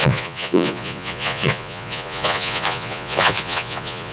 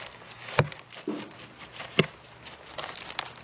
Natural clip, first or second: second